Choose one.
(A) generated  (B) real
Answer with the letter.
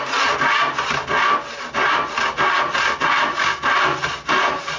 B